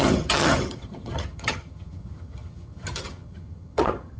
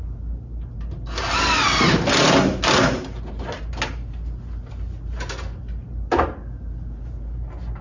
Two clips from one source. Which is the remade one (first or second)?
first